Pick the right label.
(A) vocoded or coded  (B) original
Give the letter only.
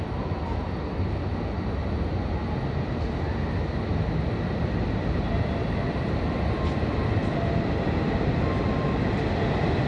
B